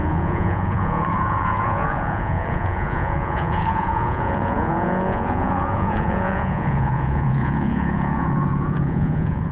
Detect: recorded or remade remade